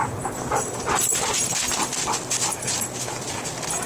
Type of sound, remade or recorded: recorded